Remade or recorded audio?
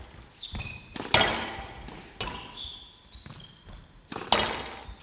recorded